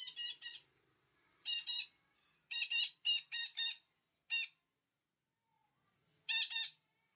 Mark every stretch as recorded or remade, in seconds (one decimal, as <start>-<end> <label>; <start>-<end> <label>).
0.0-7.2 recorded